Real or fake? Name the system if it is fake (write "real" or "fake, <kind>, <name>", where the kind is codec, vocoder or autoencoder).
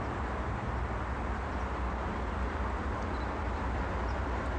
fake, vocoder, BigVGAN v2